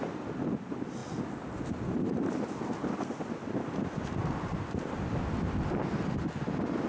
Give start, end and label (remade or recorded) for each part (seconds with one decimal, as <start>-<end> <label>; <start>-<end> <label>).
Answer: 0.0-6.9 recorded